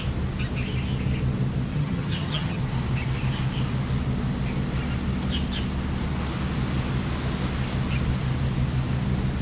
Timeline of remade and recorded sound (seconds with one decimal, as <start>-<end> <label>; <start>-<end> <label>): 0.0-1.7 recorded; 1.7-2.6 remade; 2.6-9.4 recorded